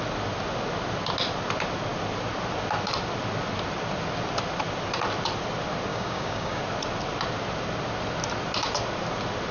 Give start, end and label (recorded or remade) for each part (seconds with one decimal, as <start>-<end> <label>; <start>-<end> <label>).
0.0-5.9 recorded; 5.9-6.6 remade; 6.6-9.5 recorded